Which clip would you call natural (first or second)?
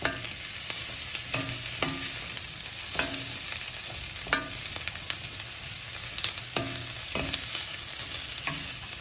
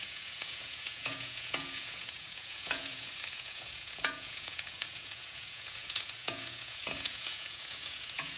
first